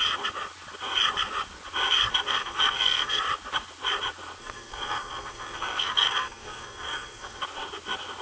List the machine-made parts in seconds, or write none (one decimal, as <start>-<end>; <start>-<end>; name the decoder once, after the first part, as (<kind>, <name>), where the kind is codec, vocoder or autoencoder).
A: 2.3-3.2 (codec, SNAC); 4.4-7.4